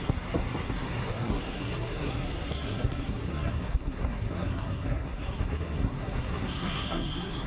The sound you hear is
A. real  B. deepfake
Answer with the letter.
B